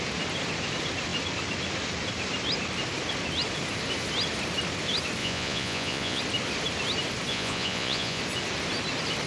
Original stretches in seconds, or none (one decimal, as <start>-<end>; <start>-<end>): 0.0-5.2; 6.2-7.3; 8.2-9.3